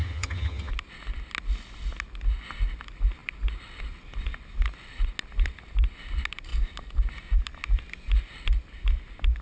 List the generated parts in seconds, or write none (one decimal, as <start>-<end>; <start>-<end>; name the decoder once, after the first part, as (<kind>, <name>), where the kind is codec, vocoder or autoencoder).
0.0-0.7 (vocoder, HiFi-GAN)